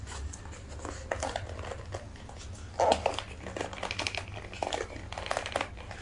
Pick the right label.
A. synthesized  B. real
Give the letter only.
B